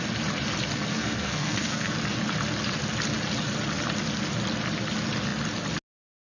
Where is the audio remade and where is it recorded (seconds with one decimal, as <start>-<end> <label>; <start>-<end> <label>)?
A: 0.0-0.9 recorded; 0.9-1.9 remade; 1.9-6.3 recorded